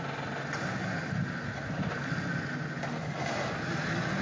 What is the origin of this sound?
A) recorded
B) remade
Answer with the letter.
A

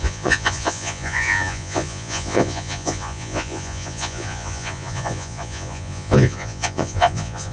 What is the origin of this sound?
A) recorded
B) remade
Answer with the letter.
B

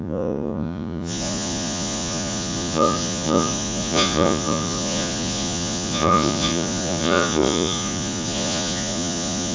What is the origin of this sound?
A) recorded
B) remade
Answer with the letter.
B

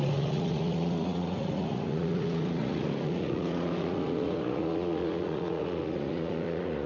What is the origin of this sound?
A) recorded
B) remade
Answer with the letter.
B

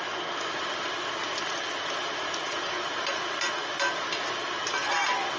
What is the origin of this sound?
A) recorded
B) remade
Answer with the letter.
A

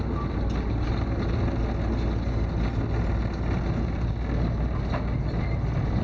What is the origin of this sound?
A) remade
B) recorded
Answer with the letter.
B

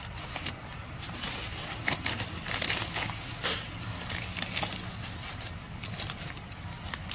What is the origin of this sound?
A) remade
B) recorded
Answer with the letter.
B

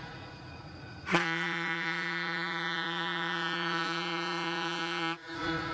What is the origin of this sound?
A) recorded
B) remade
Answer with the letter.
B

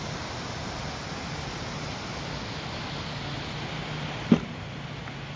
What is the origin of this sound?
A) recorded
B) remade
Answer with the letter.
A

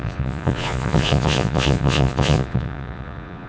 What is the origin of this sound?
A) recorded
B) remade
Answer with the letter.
B